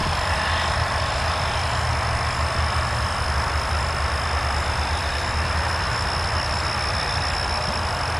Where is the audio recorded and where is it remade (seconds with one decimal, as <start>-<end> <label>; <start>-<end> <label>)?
0.0-8.2 recorded